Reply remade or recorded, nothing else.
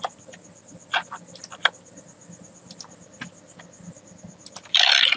recorded